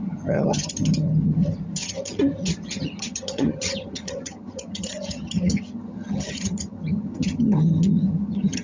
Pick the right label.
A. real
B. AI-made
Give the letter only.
B